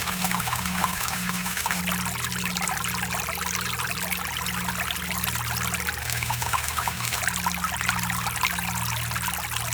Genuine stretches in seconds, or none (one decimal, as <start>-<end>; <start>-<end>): 1.8-6.0; 7.2-9.7